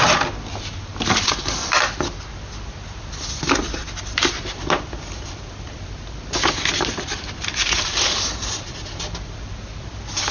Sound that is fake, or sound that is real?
real